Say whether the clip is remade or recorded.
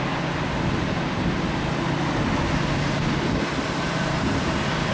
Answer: recorded